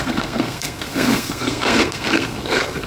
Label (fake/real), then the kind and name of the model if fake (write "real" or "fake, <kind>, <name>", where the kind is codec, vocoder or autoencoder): fake, codec, SNAC